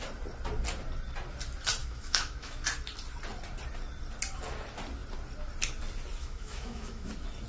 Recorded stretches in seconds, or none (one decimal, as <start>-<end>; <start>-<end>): 0.0-1.8; 2.6-6.2; 7.1-7.5